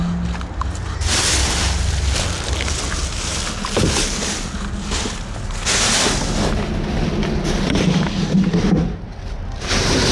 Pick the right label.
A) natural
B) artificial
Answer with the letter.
A